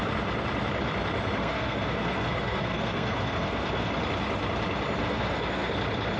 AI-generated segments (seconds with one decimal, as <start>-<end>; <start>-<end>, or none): 1.4-3.9; 5.0-5.7